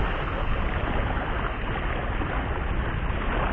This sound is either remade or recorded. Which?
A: recorded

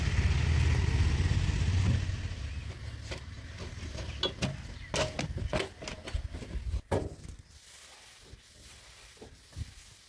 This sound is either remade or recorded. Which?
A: recorded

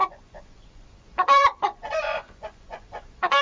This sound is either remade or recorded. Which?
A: remade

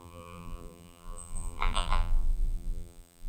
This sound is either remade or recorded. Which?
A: remade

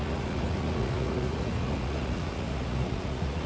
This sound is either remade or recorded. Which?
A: remade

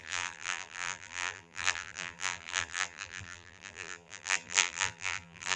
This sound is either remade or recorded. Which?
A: remade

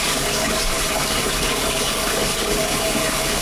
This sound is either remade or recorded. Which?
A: remade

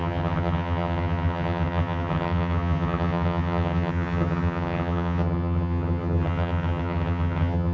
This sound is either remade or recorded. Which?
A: remade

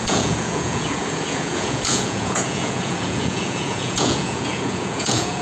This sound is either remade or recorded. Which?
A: remade